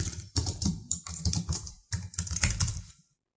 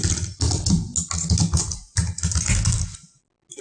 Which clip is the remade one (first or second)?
first